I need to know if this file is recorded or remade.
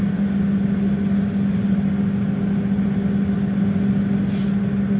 recorded